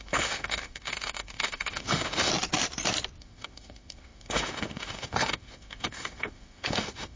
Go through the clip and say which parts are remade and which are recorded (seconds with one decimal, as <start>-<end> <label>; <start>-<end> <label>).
0.0-2.3 remade; 2.3-3.2 recorded; 3.2-7.2 remade